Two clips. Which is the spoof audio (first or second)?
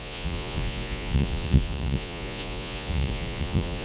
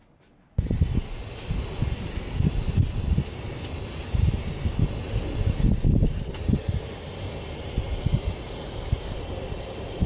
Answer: first